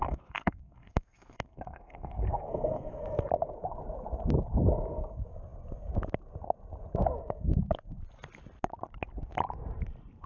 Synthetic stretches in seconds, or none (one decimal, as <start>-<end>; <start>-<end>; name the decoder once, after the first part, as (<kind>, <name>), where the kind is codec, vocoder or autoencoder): 0.0-3.0 (codec, SNAC)